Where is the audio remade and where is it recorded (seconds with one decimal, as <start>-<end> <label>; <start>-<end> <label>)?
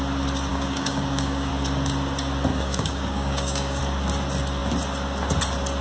0.0-0.5 recorded; 0.5-1.5 remade; 1.5-2.5 recorded; 2.5-3.8 remade; 3.8-5.8 recorded